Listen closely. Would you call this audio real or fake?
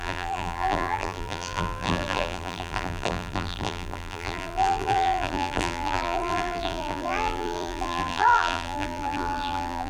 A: fake